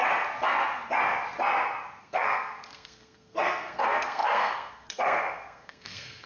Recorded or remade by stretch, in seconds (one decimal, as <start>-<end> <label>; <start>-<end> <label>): 0.0-2.0 recorded; 2.0-6.3 remade